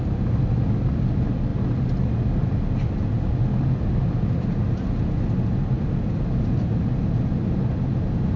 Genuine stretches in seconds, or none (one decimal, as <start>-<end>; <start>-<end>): 0.0-8.4